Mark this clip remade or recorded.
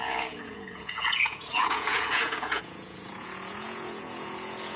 remade